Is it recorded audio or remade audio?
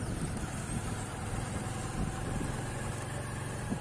recorded